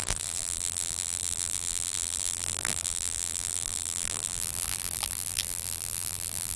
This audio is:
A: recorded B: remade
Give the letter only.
B